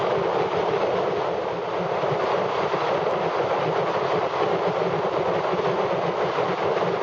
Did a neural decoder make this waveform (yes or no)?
no